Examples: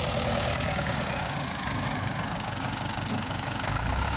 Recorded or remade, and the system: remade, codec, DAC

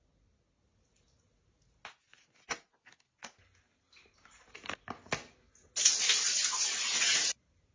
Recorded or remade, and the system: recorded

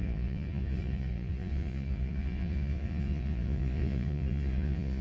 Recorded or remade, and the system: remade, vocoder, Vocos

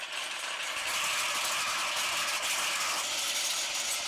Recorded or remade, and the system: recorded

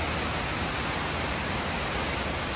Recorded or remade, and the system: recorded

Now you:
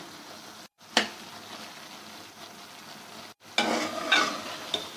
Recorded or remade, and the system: recorded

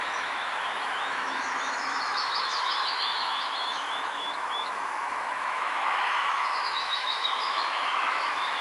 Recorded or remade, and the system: remade, autoencoder, DAC-VAE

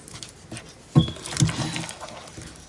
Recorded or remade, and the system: recorded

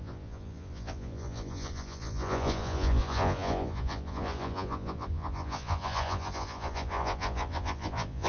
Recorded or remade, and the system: remade, vocoder, Vocos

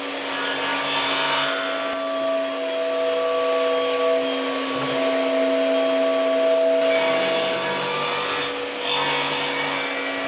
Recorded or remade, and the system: recorded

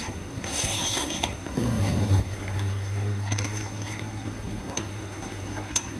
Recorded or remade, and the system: remade, codec, SNAC